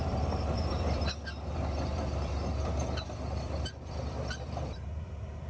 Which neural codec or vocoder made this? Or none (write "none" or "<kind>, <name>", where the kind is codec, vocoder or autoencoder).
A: vocoder, BigVGAN v2